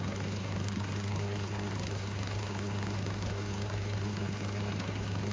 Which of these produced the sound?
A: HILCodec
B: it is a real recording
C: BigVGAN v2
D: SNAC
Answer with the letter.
D